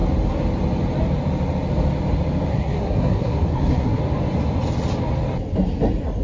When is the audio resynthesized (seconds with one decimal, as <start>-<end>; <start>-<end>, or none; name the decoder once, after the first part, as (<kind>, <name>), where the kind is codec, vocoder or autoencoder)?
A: 2.5-4.0 (codec, SNAC)